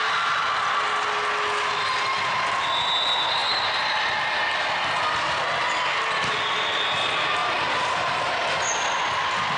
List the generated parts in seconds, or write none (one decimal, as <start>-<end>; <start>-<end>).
7.4-8.2